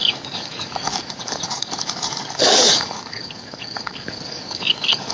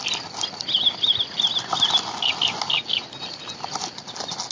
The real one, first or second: second